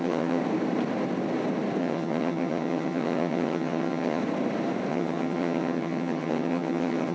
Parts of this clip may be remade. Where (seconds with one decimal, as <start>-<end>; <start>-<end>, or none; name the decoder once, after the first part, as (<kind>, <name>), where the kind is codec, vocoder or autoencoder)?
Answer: 0.0-0.4 (vocoder, HiFi-GAN); 1.8-4.2; 4.9-7.1